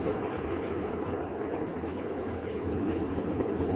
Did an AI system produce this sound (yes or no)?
yes